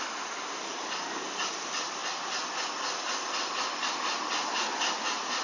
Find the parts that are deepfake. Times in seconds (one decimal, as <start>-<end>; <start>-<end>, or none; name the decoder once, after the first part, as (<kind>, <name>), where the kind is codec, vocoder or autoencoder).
none